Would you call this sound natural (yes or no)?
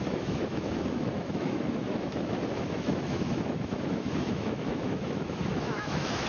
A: no